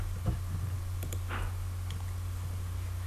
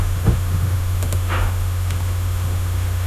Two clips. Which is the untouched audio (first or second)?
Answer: first